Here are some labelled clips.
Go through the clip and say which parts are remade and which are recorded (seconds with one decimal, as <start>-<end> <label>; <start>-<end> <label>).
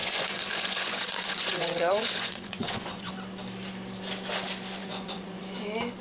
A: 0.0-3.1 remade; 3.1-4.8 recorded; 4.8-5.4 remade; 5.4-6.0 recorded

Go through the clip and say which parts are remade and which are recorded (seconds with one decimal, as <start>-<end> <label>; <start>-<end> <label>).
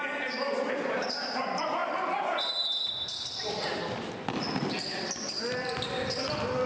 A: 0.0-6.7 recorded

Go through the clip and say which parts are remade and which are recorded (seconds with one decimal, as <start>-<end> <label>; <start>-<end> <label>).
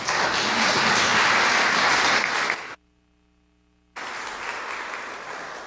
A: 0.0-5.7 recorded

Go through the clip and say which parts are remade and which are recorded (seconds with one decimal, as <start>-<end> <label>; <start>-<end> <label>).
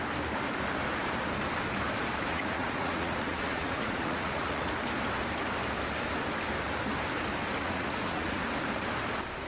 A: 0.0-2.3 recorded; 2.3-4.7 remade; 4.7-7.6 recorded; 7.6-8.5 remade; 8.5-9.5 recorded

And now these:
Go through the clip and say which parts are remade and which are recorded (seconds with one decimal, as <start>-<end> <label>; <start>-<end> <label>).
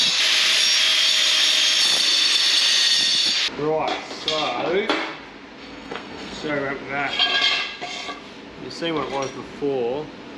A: 0.0-5.6 recorded; 5.6-6.5 remade; 6.5-10.4 recorded